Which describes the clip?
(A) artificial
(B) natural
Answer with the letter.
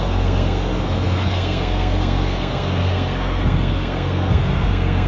A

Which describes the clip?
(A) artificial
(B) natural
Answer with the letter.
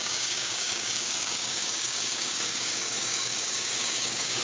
A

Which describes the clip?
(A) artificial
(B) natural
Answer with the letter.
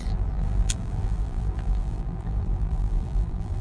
A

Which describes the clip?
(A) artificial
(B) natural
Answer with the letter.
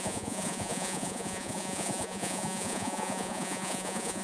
A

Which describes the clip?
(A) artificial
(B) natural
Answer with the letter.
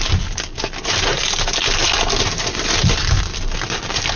B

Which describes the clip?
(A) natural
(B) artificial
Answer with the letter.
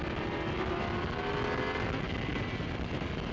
A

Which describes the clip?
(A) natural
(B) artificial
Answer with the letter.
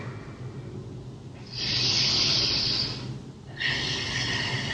A